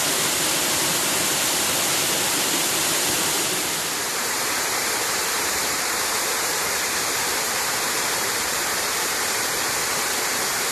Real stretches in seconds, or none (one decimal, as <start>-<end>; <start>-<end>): 0.0-4.1; 9.0-10.7